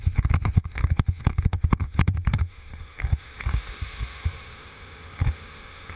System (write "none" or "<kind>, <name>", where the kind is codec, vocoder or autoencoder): autoencoder, DAC-VAE